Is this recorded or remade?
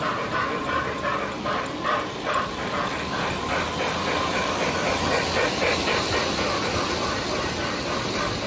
recorded